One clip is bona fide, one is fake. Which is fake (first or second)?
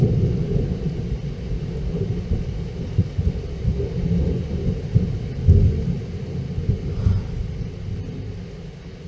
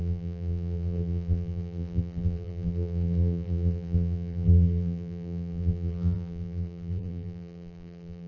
second